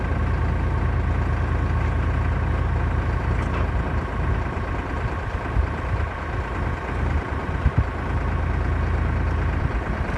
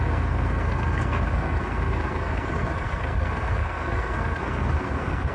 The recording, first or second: first